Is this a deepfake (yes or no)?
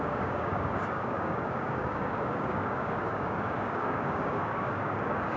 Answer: yes